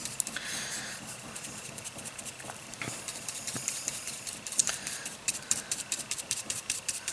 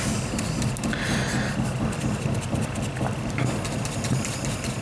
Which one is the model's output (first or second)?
first